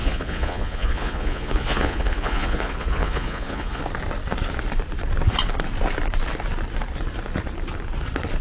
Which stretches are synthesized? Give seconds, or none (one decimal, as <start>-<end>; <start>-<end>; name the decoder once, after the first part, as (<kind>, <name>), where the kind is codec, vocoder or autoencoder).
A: 0.0-3.8 (vocoder, Vocos)